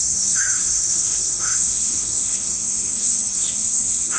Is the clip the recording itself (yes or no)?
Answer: no